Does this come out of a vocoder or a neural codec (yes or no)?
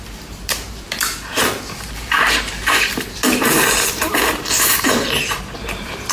yes